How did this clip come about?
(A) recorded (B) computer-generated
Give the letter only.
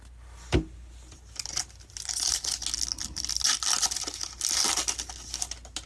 A